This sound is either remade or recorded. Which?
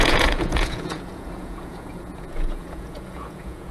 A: remade